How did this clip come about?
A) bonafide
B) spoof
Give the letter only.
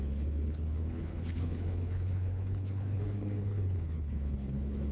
B